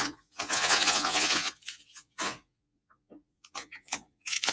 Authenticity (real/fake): fake